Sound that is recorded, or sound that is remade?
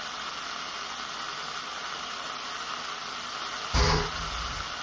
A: recorded